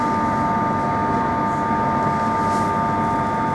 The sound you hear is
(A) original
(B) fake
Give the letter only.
A